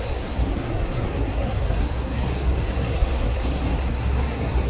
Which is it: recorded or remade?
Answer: remade